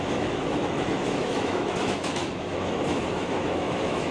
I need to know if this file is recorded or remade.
remade